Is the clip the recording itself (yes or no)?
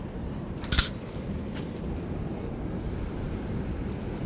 yes